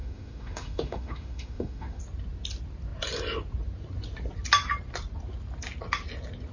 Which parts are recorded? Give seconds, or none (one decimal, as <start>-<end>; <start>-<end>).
2.0-6.5